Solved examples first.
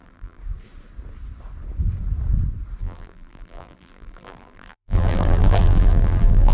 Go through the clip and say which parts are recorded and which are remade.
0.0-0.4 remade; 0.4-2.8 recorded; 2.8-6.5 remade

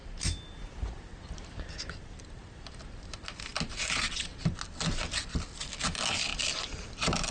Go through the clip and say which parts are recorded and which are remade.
0.0-7.3 recorded

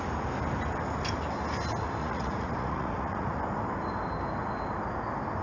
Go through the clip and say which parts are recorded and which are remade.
0.0-2.0 recorded; 2.0-3.4 remade; 3.4-5.4 recorded

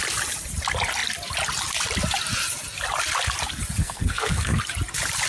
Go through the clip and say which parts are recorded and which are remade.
0.0-3.8 recorded; 3.8-4.6 remade; 4.6-5.3 recorded

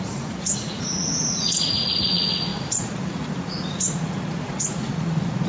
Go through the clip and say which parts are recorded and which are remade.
0.0-5.5 remade